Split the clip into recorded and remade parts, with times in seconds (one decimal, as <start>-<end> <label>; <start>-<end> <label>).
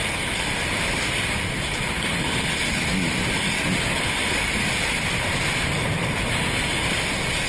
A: 0.0-7.5 recorded